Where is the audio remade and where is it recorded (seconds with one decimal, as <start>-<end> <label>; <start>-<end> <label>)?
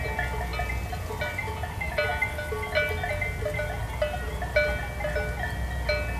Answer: 0.0-6.2 recorded